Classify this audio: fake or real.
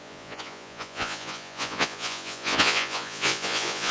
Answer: fake